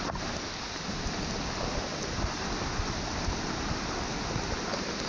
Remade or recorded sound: recorded